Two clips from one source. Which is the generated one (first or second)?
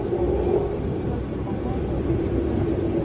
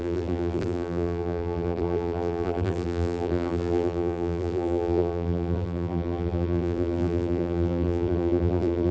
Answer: second